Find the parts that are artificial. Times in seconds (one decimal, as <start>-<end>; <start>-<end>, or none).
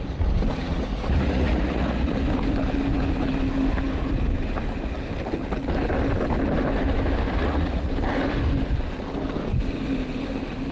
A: 0.6-2.1; 7.4-7.9